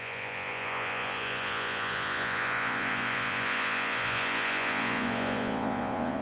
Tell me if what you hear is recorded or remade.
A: remade